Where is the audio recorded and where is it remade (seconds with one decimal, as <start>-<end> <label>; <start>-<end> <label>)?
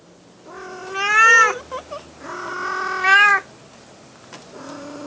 0.0-5.1 recorded